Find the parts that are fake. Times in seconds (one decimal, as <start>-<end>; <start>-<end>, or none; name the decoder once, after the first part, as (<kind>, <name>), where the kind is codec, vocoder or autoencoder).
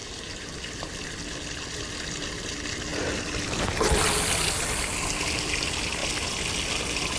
0.0-0.9 (vocoder, BigVGAN v2)